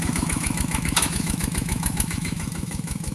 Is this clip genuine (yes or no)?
no